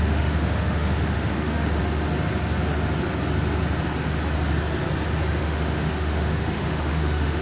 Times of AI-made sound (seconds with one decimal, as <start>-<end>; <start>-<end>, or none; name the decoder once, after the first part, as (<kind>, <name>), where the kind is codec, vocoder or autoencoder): 0.0-1.8 (autoencoder, DAC-VAE); 5.4-7.4